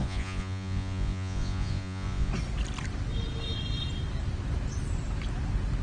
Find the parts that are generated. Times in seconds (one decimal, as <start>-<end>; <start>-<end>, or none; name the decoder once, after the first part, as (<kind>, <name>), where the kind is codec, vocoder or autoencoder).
0.0-2.3 (vocoder, Vocos)

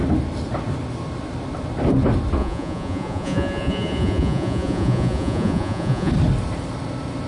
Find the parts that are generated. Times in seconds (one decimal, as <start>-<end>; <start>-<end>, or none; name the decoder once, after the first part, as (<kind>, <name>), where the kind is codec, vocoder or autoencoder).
2.4-6.1 (vocoder, Vocos)